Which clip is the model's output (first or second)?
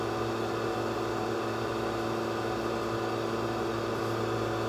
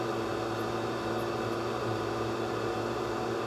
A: second